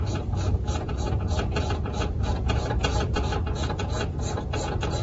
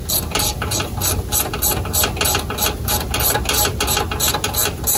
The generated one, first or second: first